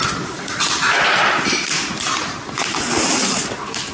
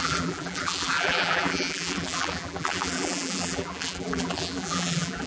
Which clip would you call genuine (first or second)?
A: first